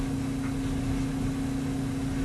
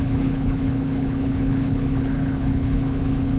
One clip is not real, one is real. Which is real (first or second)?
first